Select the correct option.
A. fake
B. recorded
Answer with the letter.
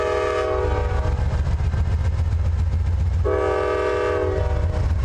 B